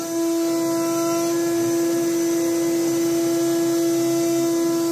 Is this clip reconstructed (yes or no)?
no